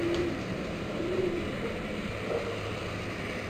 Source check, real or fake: fake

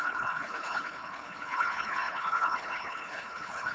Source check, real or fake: fake